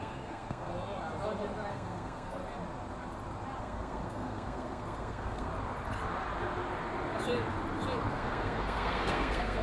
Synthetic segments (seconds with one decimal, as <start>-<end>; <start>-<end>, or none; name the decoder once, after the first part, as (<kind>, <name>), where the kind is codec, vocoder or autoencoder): 0.0-0.7 (codec, SNAC); 1.7-2.4; 3.6-5.5; 8.1-9.6